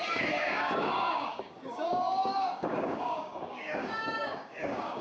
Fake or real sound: fake